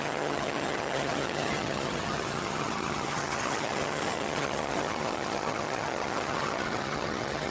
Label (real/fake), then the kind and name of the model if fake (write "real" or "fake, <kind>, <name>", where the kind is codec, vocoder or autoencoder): fake, vocoder, HiFi-GAN